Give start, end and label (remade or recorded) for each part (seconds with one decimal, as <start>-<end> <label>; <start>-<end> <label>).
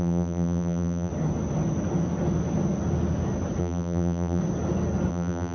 0.0-1.1 remade; 1.1-3.6 recorded; 3.6-4.4 remade; 4.4-5.1 recorded; 5.1-5.5 remade